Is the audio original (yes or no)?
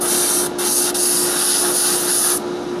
yes